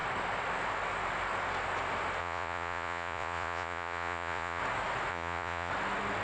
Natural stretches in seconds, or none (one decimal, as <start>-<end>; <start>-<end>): 0.0-2.2; 4.6-5.1; 5.7-6.2